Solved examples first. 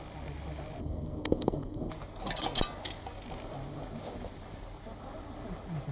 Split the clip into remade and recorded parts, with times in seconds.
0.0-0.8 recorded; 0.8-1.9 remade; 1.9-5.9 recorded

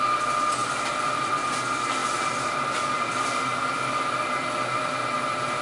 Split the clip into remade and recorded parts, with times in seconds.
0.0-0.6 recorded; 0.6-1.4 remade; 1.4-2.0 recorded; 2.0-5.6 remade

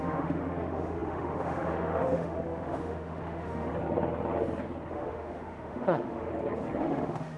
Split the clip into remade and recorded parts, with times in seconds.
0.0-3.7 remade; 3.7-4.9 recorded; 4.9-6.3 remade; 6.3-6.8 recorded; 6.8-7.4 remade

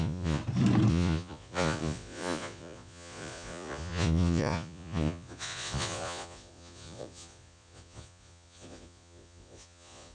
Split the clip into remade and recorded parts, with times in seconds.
0.0-0.4 remade; 0.4-0.9 recorded; 0.9-10.1 remade